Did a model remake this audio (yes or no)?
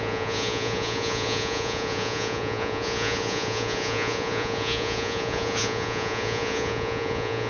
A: yes